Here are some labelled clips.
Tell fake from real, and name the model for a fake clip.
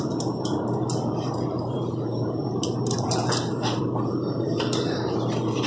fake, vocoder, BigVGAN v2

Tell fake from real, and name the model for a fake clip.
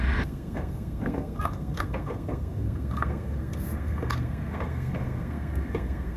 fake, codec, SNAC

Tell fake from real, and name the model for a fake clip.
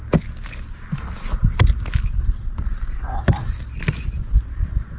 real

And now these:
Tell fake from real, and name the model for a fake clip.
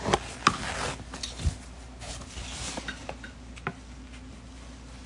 real